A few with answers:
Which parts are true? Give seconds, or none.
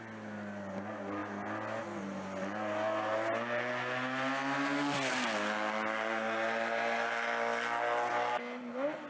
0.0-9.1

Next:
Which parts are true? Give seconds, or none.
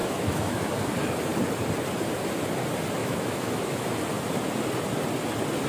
0.7-3.0; 3.9-5.7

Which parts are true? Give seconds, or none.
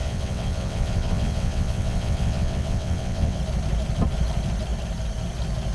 3.4-5.7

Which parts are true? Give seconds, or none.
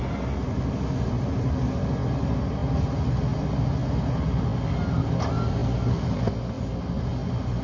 0.0-7.6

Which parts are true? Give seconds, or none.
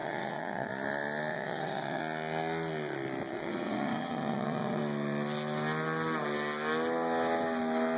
0.7-1.3; 2.0-3.3; 4.8-8.0